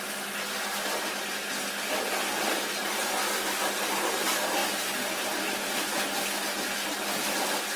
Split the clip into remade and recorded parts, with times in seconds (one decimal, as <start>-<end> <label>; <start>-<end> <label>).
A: 0.0-4.6 recorded; 4.6-5.2 remade; 5.2-7.8 recorded